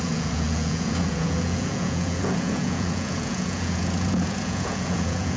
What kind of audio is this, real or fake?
fake